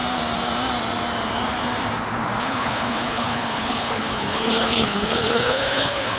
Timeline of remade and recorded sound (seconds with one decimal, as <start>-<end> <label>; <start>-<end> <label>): 0.0-2.4 recorded; 2.4-6.2 remade